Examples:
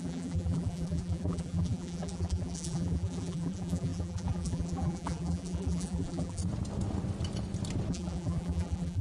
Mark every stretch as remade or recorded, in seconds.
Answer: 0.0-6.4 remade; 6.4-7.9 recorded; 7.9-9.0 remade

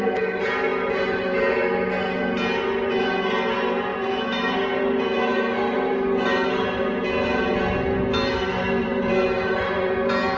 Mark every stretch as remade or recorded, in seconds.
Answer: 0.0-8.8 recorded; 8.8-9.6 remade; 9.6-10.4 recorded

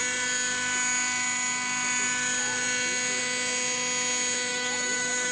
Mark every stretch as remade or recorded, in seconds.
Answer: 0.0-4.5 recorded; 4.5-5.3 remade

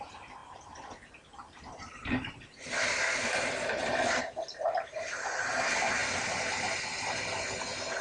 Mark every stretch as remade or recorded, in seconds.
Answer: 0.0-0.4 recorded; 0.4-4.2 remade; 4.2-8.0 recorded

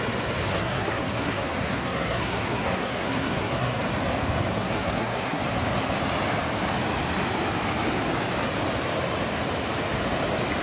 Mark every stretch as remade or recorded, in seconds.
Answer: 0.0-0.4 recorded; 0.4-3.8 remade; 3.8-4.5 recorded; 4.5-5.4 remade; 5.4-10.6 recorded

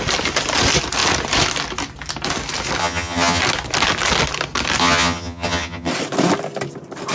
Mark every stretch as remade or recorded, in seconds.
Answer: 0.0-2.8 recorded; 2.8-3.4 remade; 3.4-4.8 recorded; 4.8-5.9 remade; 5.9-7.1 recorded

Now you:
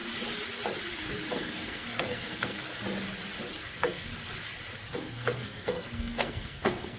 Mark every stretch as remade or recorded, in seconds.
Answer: 0.0-1.3 recorded; 1.3-2.7 remade; 2.7-3.6 recorded; 3.6-4.1 remade; 4.1-4.9 recorded; 4.9-7.0 remade